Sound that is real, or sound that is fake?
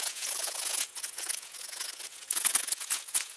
fake